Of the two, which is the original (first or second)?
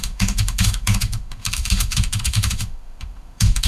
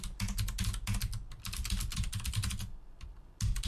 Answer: second